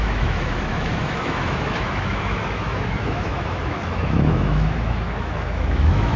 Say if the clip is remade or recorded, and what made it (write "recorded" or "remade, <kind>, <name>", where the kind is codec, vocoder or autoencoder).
remade, autoencoder, DAC-VAE